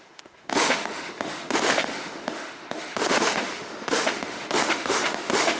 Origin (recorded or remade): remade